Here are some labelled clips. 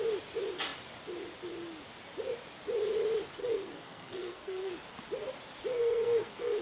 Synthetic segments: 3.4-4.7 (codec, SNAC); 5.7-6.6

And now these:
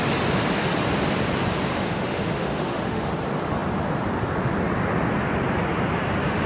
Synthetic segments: 1.7-3.1 (autoencoder, DAC-VAE)

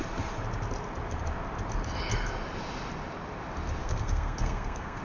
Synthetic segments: 3.8-5.0 (codec, SNAC)

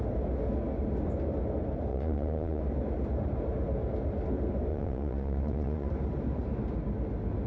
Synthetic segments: 1.9-2.6 (vocoder, Vocos); 4.7-5.9

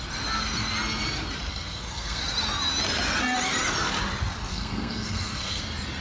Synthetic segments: 1.5-2.2 (codec, SNAC); 4.5-5.6

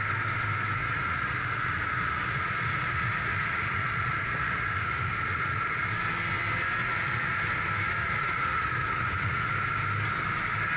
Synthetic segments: 0.8-5.9 (vocoder, Vocos); 6.8-7.4; 8.0-9.5

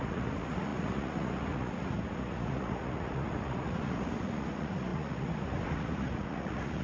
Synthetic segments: 0.0-6.8 (vocoder, Vocos)